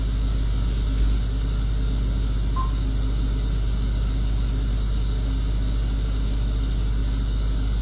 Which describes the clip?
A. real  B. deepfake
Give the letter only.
A